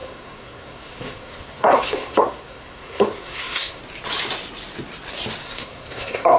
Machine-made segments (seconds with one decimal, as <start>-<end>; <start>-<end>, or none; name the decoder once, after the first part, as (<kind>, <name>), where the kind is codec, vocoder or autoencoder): 0.0-3.8 (codec, SNAC); 5.4-6.4